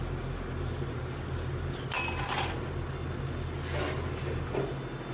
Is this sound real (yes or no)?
yes